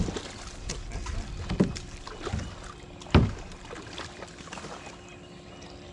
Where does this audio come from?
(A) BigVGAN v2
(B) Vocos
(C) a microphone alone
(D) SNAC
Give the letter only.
C